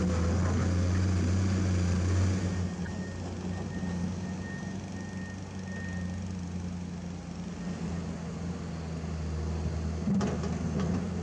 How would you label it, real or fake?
real